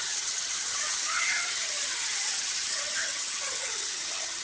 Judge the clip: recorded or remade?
remade